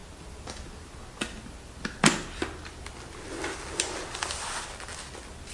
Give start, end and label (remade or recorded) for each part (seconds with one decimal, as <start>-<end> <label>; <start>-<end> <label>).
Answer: 0.0-5.5 recorded